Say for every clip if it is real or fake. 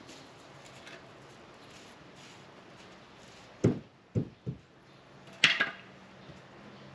real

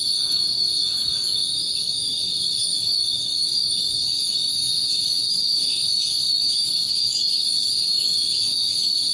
fake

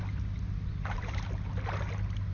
real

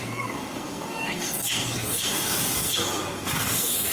fake